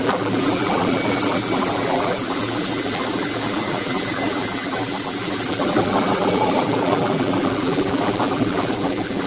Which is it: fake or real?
fake